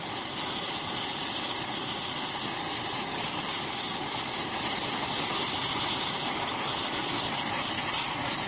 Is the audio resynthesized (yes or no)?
no